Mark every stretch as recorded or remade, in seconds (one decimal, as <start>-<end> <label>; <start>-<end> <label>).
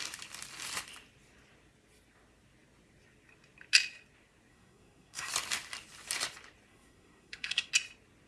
0.0-4.5 recorded; 4.5-5.3 remade; 5.3-6.7 recorded; 6.7-7.7 remade; 7.7-8.3 recorded